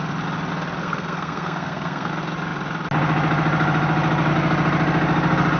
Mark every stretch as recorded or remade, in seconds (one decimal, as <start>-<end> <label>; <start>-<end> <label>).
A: 0.0-0.8 recorded; 0.8-2.1 remade; 2.1-5.6 recorded